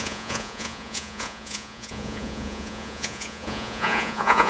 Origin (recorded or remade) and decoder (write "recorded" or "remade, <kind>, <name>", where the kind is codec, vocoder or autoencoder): remade, vocoder, Vocos